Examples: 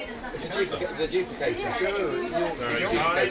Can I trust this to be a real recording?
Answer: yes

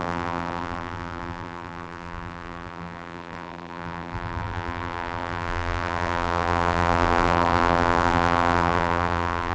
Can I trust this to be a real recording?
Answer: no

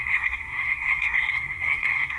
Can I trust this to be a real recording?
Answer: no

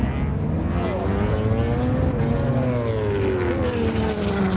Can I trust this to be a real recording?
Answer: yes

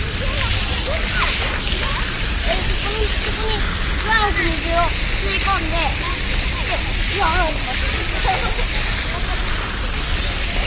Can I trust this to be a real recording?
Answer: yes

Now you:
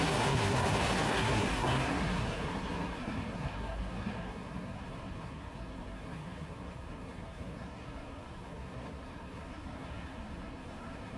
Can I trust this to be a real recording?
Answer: no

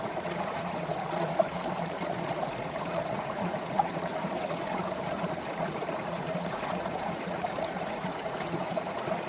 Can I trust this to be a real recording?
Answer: no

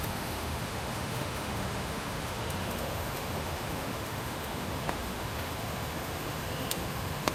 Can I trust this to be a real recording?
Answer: no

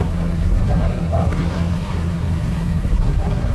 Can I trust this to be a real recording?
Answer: no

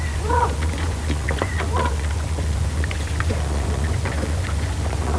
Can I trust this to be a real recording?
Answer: no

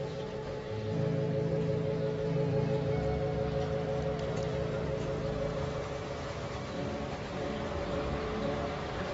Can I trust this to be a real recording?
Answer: yes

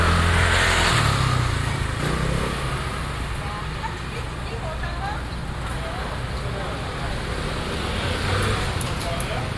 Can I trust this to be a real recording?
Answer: yes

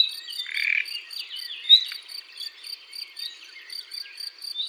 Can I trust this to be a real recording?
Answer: no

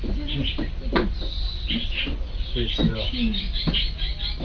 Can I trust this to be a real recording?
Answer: yes